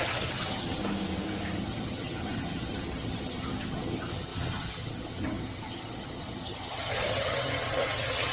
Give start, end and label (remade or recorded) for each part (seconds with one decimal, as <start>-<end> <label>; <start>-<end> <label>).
0.0-0.8 remade; 0.8-1.6 recorded; 1.6-8.3 remade